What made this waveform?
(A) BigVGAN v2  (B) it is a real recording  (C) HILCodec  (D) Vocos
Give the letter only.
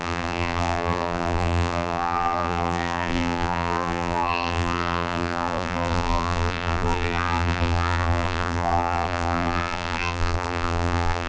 A